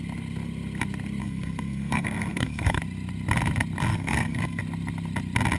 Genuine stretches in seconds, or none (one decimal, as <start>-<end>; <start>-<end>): 0.0-1.2; 2.8-3.9; 4.6-5.6